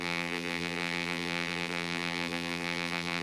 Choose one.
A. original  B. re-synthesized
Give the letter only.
B